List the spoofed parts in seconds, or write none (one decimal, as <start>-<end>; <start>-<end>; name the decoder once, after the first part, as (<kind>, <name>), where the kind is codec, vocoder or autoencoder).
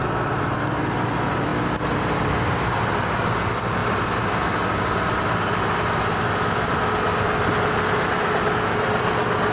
none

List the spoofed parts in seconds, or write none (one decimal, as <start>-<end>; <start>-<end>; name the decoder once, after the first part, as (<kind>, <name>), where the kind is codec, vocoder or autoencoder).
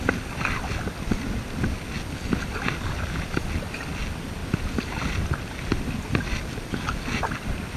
none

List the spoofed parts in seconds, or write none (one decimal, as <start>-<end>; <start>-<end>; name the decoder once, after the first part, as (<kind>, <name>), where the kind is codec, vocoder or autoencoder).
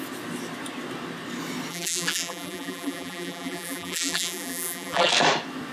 1.7-5.1 (vocoder, BigVGAN v2)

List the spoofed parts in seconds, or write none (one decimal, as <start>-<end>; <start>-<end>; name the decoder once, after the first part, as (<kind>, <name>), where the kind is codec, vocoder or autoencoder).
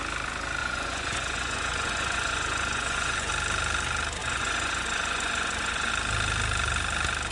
0.6-3.3 (vocoder, Vocos); 4.2-5.9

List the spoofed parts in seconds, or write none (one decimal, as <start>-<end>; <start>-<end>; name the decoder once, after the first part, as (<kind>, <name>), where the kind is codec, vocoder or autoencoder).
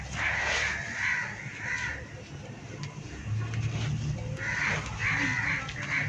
none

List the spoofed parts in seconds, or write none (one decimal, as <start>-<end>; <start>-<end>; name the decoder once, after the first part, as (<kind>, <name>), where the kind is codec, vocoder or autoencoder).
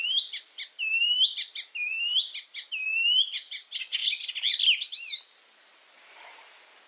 none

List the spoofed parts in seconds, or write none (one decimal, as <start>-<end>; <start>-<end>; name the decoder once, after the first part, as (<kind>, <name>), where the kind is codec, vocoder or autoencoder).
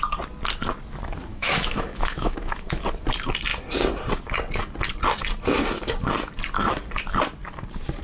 1.3-2.8 (autoencoder, DAC-VAE)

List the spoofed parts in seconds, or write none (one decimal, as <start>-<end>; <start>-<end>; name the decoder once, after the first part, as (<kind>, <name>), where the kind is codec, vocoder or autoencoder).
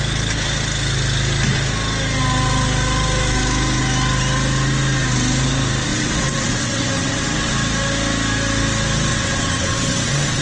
5.9-7.5 (vocoder, WaveNeXt); 9.1-10.4